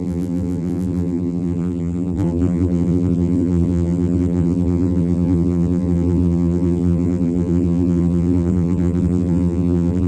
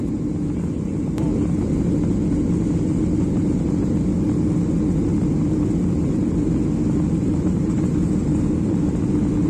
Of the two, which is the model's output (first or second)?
first